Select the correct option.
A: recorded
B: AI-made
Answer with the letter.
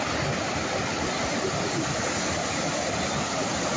A